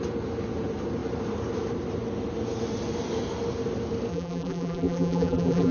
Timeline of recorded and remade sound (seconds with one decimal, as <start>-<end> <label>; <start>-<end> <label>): 0.0-4.1 recorded; 4.1-5.7 remade